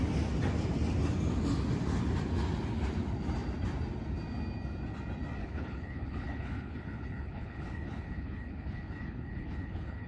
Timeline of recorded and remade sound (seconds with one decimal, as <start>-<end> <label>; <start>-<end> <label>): 0.0-5.4 recorded; 5.4-10.1 remade